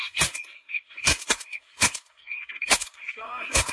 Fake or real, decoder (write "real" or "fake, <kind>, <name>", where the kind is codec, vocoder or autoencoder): fake, codec, SNAC